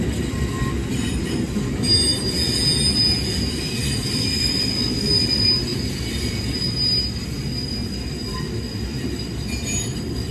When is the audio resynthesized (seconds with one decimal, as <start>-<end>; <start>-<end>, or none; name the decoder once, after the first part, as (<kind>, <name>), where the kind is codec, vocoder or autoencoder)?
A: none